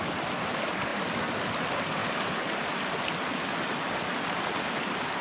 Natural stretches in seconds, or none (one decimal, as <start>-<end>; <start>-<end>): 0.0-5.2